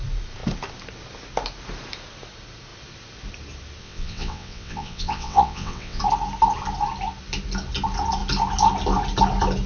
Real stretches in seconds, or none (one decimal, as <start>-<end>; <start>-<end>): 0.0-3.8; 6.0-9.7